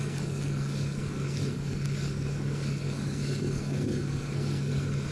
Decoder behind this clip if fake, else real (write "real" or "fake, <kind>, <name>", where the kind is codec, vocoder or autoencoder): fake, codec, SNAC